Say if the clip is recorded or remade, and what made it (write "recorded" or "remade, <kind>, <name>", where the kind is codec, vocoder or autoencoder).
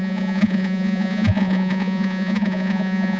remade, vocoder, Vocos